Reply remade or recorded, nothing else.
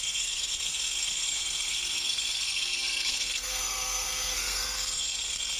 remade